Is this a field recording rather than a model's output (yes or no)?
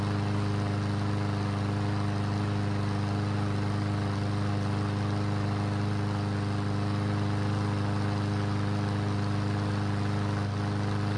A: yes